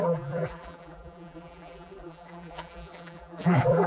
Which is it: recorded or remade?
remade